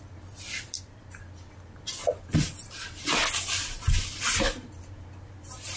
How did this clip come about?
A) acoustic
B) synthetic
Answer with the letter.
A